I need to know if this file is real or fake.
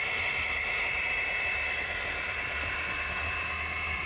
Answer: real